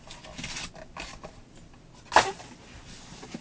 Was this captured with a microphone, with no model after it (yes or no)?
yes